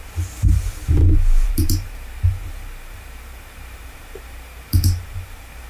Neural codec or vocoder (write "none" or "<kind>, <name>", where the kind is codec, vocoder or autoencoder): vocoder, BigVGAN v2